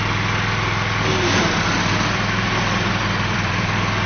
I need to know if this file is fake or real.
fake